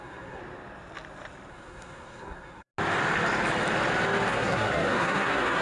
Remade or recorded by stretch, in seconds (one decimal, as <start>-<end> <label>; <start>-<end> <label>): 0.0-0.4 remade; 0.4-1.5 recorded; 1.5-2.7 remade; 2.7-4.3 recorded; 4.3-5.6 remade